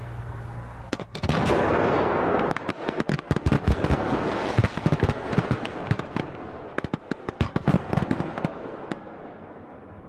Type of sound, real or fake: fake